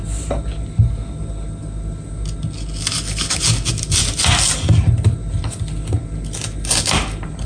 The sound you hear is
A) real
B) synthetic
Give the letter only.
A